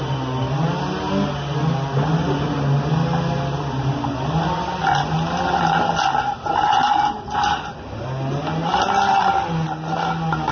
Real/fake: real